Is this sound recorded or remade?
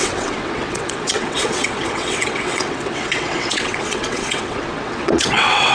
remade